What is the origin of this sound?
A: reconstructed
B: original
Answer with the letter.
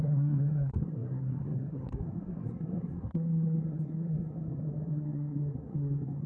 A